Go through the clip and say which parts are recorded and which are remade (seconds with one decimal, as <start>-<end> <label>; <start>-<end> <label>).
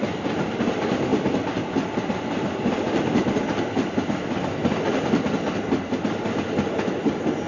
0.0-7.5 recorded